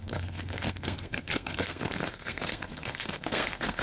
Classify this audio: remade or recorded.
remade